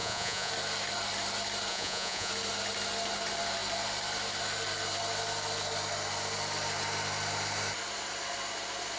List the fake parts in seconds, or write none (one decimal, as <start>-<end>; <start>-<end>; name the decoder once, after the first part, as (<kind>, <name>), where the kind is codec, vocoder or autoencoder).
0.0-0.5 (vocoder, Vocos); 1.7-2.3